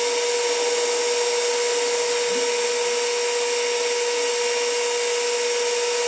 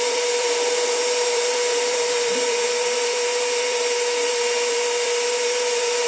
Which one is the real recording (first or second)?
first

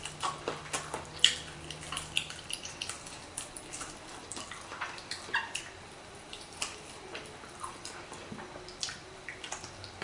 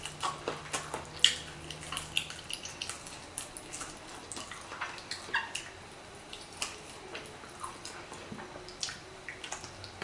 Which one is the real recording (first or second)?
second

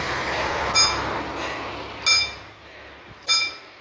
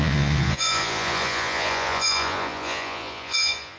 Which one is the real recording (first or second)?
first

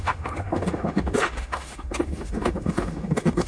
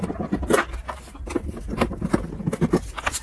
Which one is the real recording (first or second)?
second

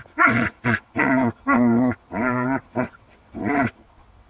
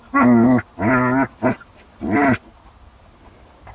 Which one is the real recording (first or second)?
second